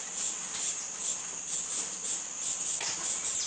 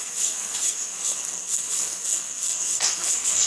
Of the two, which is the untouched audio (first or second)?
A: first